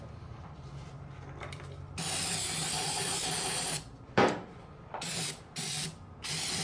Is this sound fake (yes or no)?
yes